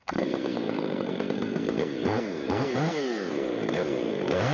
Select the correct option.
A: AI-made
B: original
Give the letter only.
A